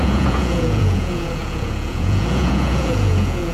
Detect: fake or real fake